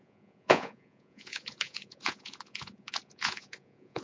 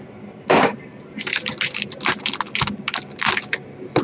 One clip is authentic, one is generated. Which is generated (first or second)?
first